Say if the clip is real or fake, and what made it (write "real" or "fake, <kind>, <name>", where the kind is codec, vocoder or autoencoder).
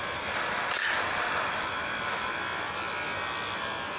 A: real